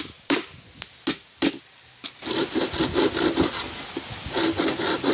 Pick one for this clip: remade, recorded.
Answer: recorded